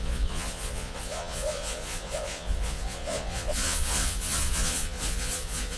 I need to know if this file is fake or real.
fake